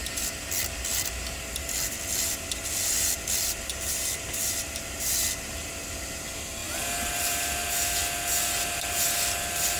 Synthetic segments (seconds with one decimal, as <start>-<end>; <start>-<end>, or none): 0.0-6.6; 7.1-7.6; 8.9-9.8